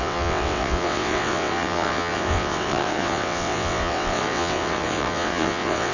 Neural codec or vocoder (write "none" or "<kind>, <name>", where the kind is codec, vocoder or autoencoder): vocoder, WaveNeXt